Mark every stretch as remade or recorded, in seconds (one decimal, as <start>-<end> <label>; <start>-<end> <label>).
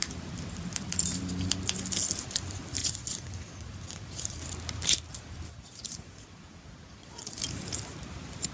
0.0-2.8 recorded; 2.8-4.4 remade; 4.4-5.5 recorded; 5.5-7.4 remade; 7.4-8.5 recorded